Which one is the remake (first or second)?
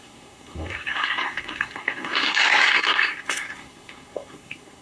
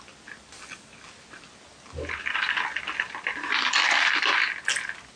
first